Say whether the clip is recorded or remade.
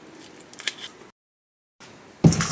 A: recorded